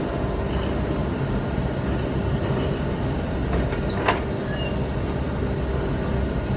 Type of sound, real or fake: real